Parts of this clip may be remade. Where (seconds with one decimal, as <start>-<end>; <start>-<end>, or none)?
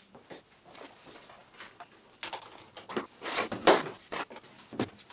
none